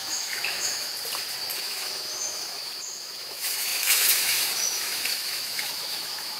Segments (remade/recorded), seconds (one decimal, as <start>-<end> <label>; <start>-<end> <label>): 0.0-0.9 remade; 0.9-1.6 recorded; 1.6-6.4 remade